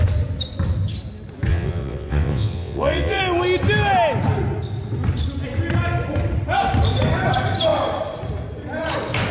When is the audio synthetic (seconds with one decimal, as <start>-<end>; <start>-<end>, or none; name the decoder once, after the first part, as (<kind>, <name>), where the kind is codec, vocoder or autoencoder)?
1.5-3.2 (vocoder, WaveNeXt)